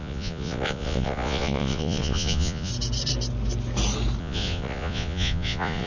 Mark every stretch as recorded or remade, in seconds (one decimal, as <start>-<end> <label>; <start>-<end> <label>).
0.0-2.7 remade; 2.7-4.2 recorded; 4.2-5.9 remade